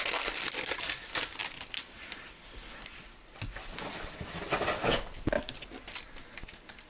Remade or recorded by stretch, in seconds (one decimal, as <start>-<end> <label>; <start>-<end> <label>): 0.0-6.9 recorded